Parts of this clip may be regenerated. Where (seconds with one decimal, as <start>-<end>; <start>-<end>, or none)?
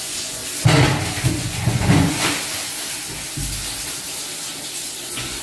0.0-0.4; 1.3-2.3; 5.0-5.4